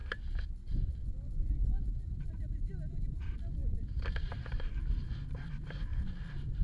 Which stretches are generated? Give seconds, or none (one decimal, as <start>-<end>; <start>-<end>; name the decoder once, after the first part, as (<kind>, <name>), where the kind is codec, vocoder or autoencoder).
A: 0.0-2.9 (vocoder, BigVGAN v2); 3.6-5.5; 5.9-6.6